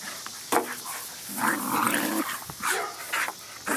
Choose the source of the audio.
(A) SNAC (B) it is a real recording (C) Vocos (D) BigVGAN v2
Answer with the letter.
B